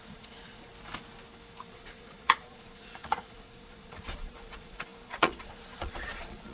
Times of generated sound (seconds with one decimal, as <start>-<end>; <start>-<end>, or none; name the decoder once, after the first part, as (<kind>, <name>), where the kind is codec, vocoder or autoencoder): 0.0-0.7 (vocoder, Vocos); 1.7-6.5